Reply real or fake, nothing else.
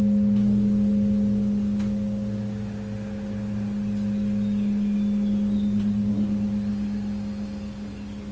real